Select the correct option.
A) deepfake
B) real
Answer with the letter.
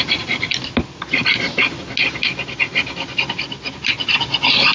B